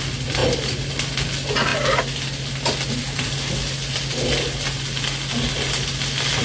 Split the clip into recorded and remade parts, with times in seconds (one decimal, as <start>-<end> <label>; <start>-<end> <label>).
0.0-6.4 recorded